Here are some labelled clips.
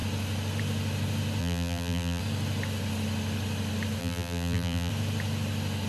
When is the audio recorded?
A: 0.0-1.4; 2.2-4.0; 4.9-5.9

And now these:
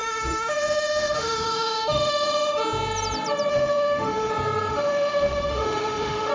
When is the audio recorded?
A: 2.6-3.5; 4.3-4.7

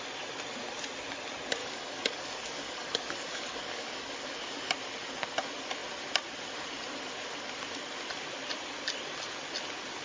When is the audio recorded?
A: 0.0-1.6; 4.7-10.0

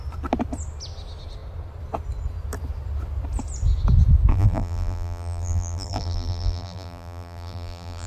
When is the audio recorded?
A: 0.0-4.3